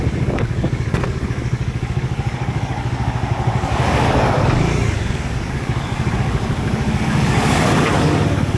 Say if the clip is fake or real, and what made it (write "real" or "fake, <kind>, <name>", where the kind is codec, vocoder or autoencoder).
fake, codec, DAC